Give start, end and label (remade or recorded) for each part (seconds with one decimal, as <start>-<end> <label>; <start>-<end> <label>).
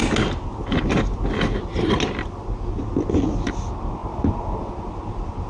0.0-5.5 recorded